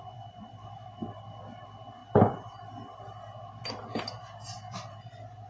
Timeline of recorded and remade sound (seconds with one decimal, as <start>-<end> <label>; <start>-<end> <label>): 0.0-5.5 recorded